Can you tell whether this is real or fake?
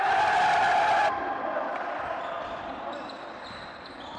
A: fake